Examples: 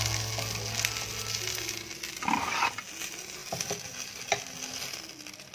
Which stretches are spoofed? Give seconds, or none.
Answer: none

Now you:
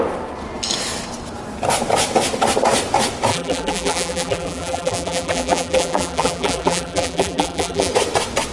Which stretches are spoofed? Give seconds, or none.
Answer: 3.3-7.9 (vocoder, BigVGAN v2)

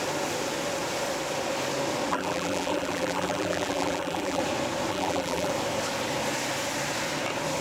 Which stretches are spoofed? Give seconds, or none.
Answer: 2.1-4.4 (vocoder, BigVGAN v2); 4.9-5.5